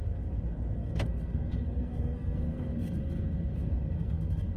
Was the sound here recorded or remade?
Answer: remade